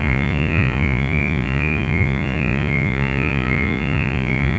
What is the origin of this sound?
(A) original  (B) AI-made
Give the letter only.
B